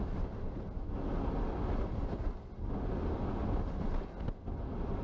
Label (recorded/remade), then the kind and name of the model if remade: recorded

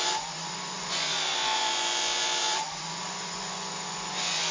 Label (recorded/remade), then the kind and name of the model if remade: remade, vocoder, Vocos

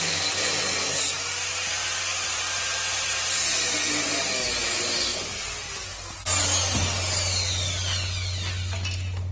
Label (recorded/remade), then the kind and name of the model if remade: recorded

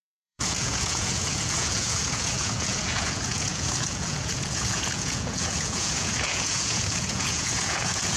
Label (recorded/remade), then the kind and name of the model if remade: remade, vocoder, Vocos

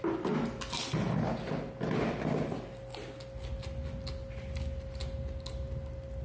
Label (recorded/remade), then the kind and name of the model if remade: recorded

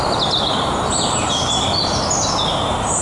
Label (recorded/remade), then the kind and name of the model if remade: recorded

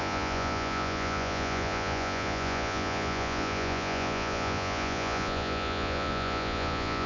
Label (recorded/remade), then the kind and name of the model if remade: remade, vocoder, Vocos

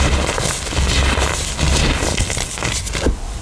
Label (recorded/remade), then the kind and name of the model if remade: recorded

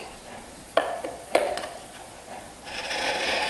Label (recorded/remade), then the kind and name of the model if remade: remade, vocoder, Vocos